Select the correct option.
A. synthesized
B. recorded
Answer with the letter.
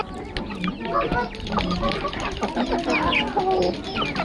B